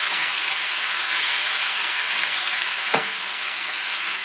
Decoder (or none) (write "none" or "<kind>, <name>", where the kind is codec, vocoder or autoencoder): codec, SNAC